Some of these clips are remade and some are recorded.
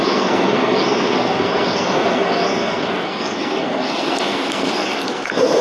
remade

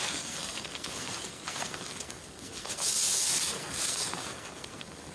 remade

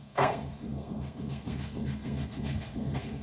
remade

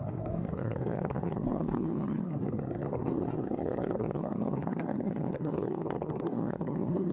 remade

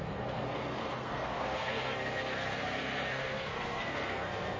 remade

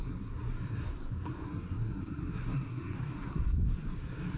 remade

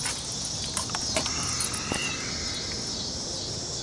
recorded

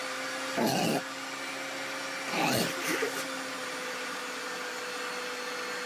recorded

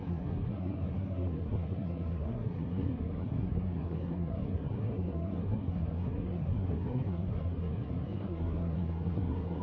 remade